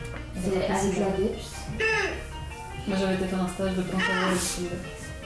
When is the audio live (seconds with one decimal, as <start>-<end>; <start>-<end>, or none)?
0.0-5.3